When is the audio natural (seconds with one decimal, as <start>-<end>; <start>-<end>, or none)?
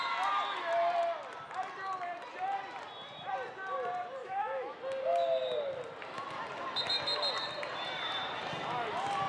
0.0-4.2; 4.8-9.3